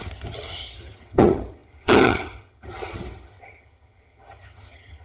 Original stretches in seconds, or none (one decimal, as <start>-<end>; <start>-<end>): none